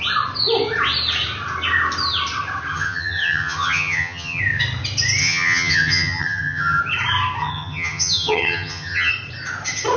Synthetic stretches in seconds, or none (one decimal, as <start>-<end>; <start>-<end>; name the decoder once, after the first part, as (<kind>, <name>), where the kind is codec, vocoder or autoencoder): 2.7-4.4 (vocoder, HiFi-GAN); 5.2-6.8; 7.4-9.1